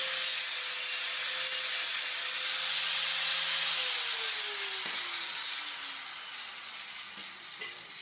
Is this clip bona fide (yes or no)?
yes